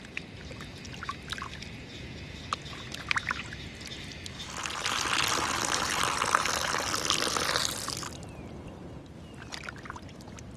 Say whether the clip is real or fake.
real